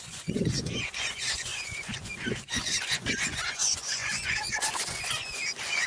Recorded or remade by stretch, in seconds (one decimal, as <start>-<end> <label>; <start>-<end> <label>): 0.0-5.9 remade